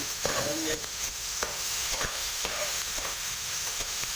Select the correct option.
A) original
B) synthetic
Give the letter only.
B